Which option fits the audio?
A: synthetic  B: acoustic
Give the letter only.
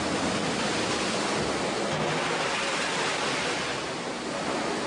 B